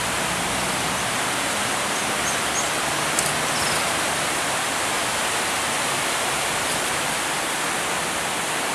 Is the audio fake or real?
real